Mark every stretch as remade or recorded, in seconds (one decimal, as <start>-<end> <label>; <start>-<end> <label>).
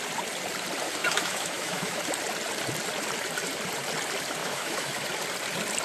0.0-1.0 recorded; 1.0-2.0 remade; 2.0-4.4 recorded; 4.4-4.9 remade; 4.9-5.8 recorded